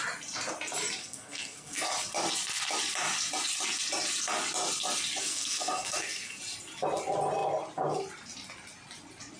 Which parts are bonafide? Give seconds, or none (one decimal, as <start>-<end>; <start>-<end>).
0.0-1.0; 1.9-5.2; 6.4-9.4